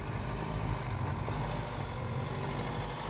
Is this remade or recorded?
recorded